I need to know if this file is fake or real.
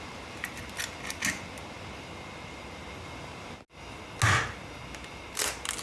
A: real